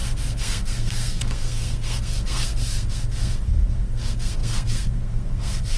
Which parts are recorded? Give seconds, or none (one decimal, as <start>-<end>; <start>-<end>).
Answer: none